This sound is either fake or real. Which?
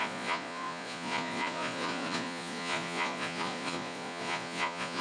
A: fake